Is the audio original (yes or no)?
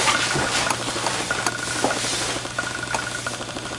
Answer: yes